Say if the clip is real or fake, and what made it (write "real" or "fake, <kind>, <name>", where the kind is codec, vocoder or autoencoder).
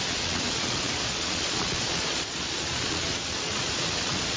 fake, vocoder, Vocos